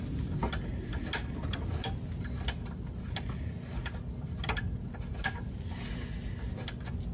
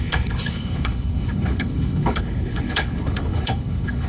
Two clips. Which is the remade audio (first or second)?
second